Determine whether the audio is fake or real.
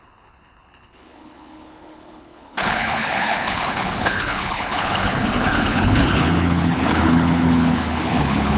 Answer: fake